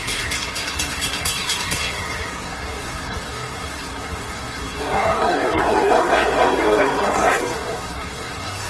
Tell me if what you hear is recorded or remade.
remade